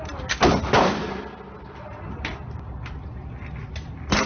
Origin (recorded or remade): recorded